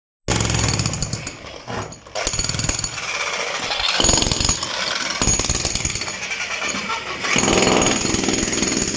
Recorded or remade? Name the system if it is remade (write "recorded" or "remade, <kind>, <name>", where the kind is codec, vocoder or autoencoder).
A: recorded